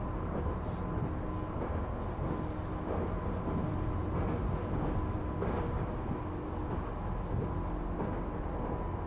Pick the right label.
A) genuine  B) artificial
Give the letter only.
A